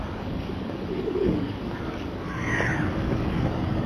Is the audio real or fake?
fake